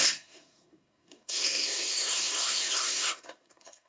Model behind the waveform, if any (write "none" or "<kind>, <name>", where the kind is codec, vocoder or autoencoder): codec, SNAC